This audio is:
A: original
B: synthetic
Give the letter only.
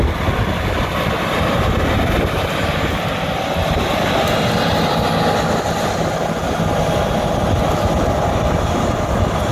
A